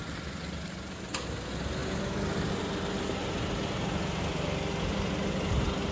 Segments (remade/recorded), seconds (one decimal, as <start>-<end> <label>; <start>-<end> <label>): 0.0-5.9 recorded